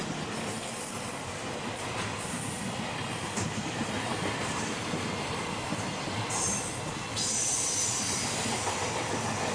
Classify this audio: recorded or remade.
recorded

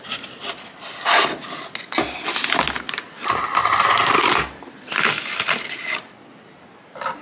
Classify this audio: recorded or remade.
recorded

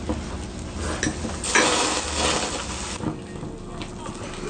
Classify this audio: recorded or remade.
recorded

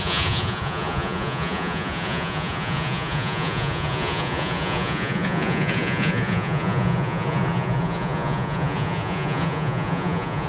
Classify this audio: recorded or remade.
remade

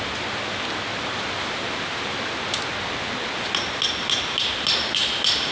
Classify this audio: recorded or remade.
recorded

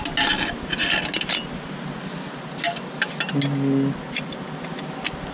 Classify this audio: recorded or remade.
recorded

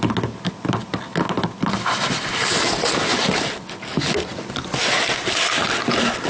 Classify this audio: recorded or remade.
recorded